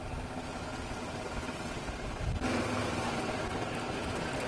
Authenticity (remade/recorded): recorded